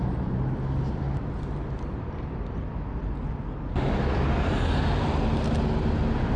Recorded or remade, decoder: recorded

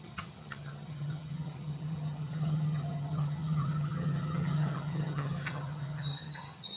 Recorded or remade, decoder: remade, vocoder, HiFi-GAN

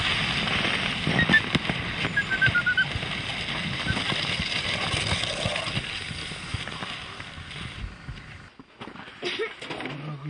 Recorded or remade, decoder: recorded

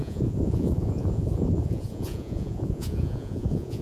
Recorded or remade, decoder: remade, vocoder, Vocos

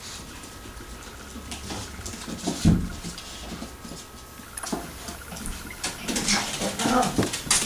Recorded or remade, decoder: recorded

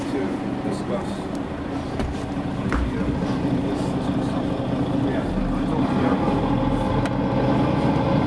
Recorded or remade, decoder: recorded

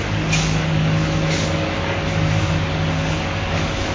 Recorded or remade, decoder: remade, codec, DAC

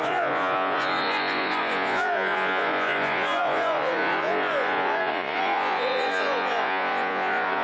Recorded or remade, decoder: remade, vocoder, Vocos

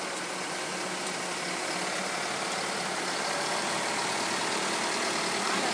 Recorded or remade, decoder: remade, vocoder, BigVGAN v2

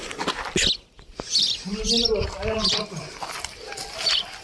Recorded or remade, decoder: recorded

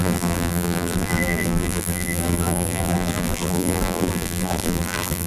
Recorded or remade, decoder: remade, vocoder, BigVGAN v2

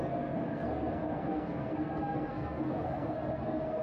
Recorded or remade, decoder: remade, codec, SNAC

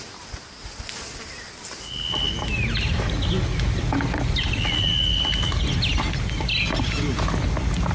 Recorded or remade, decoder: recorded